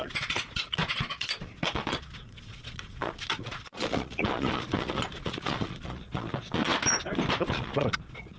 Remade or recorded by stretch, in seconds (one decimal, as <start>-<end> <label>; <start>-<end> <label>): 0.0-6.7 remade; 6.7-7.4 recorded; 7.4-8.4 remade